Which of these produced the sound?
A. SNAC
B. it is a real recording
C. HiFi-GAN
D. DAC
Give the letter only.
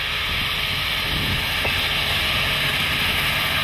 B